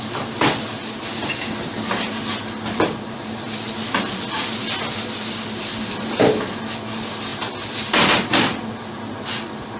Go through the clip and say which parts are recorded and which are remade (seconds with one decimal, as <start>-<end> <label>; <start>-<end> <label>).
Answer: 0.0-9.8 recorded